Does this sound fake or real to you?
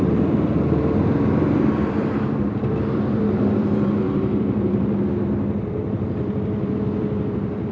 fake